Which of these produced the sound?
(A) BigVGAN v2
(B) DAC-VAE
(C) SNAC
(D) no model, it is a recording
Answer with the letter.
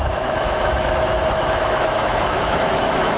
B